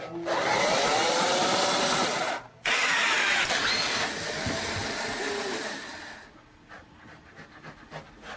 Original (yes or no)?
yes